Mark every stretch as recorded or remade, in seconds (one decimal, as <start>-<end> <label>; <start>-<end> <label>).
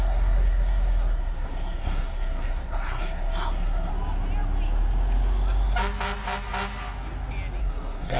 0.0-3.9 remade; 3.9-7.6 recorded; 7.6-8.2 remade